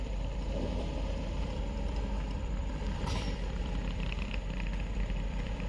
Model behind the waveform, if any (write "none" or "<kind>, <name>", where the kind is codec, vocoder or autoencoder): vocoder, BigVGAN v2